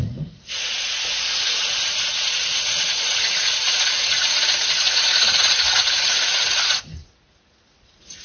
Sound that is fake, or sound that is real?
fake